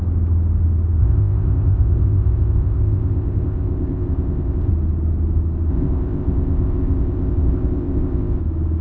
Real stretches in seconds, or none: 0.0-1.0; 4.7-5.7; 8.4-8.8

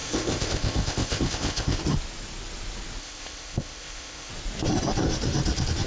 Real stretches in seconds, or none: 1.8-3.0; 4.3-5.9

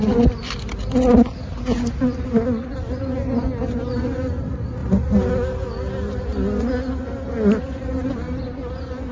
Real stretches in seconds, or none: 0.0-9.1